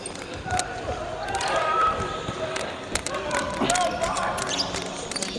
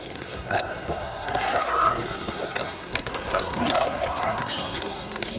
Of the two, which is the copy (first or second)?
second